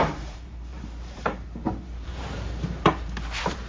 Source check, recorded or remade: remade